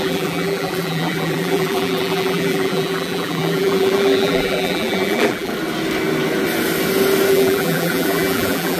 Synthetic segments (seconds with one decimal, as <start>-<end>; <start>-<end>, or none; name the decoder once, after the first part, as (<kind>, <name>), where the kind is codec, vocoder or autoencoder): 0.0-5.5 (vocoder, BigVGAN v2); 7.3-8.8